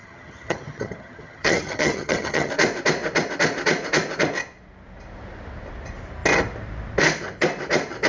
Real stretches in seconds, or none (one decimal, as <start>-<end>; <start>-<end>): 2.5-8.1